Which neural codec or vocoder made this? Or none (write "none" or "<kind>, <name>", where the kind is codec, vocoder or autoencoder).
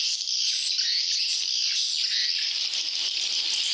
none